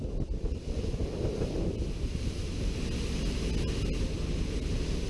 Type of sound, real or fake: real